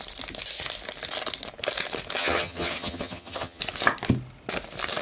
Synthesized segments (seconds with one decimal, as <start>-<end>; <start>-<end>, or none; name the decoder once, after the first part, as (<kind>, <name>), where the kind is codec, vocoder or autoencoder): 2.2-3.6 (vocoder, HiFi-GAN)